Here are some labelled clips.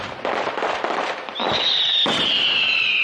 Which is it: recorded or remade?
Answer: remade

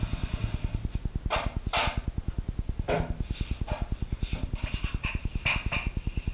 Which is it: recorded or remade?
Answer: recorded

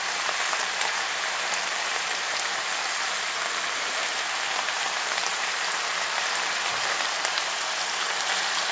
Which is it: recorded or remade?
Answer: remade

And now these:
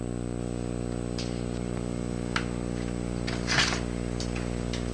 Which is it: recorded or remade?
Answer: recorded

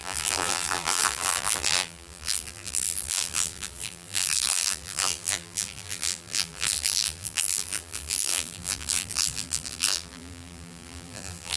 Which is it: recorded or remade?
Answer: remade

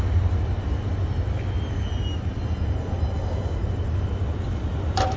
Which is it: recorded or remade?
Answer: recorded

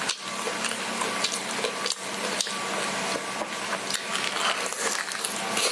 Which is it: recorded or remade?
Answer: recorded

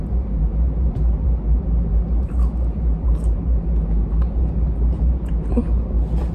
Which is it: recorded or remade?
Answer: remade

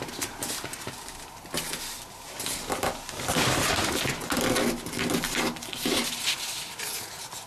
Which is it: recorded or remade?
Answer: recorded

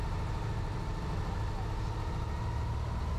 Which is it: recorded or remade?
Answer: recorded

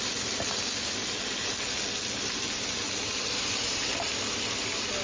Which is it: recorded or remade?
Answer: recorded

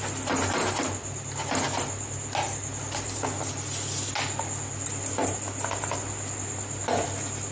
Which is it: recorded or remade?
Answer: recorded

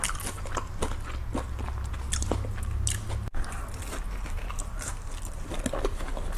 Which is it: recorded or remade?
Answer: recorded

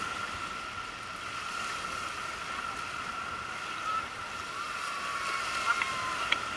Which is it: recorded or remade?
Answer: recorded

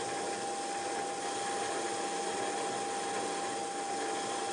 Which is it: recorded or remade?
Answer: recorded